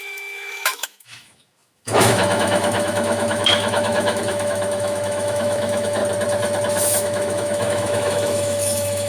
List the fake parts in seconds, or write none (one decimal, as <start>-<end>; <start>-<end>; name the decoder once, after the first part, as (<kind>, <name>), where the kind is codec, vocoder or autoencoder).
0.0-6.0 (autoencoder, DAC-VAE); 6.8-9.1